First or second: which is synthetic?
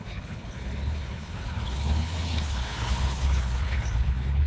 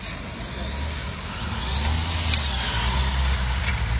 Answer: first